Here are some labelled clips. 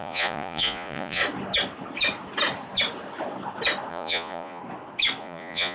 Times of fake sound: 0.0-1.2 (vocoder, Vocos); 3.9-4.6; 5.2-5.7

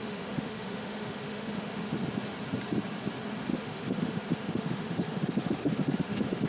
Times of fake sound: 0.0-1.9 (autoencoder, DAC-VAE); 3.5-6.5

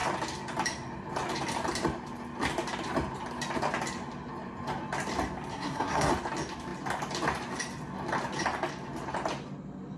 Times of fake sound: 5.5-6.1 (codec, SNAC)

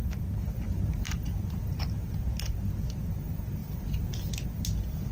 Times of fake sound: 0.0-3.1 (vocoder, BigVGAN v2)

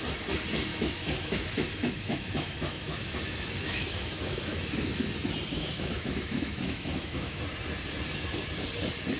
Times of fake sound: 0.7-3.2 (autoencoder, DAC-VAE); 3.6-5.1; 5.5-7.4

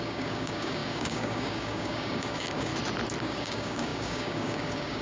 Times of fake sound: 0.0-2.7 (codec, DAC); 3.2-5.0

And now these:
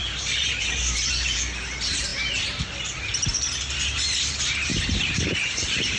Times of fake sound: 0.0-1.1 (vocoder, BigVGAN v2); 4.7-6.0

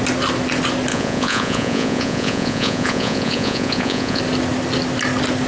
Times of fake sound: 0.9-4.2 (vocoder, Vocos)